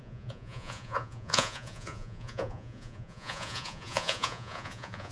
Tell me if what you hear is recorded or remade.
remade